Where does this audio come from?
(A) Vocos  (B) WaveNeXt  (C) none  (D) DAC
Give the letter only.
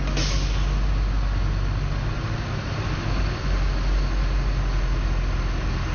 C